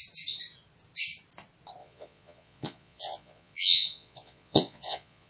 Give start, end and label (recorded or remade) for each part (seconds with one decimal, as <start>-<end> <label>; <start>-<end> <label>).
0.0-1.8 recorded; 1.8-5.3 remade